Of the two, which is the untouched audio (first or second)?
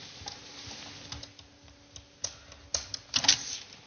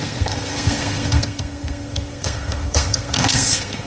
first